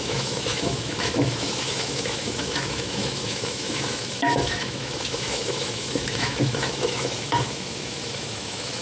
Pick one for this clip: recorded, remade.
remade